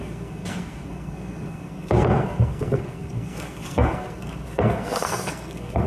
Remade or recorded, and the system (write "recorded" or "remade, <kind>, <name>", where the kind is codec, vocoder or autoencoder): remade, codec, SNAC